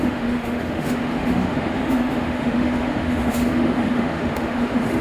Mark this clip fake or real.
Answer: fake